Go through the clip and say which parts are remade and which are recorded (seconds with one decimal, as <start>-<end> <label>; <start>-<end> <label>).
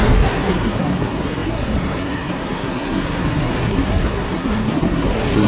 0.0-5.5 remade